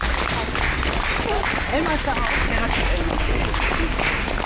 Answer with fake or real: real